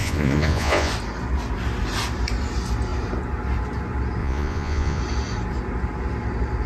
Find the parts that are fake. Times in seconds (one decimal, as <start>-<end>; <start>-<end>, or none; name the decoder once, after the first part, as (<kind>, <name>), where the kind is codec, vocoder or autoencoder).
0.0-0.9 (vocoder, Vocos); 4.2-5.0